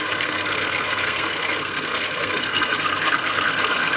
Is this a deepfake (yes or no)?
yes